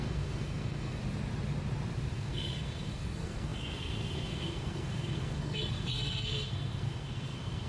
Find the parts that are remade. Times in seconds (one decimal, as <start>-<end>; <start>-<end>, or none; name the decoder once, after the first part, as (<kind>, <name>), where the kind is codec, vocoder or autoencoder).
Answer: 0.0-1.0 (codec, SNAC); 2.1-7.7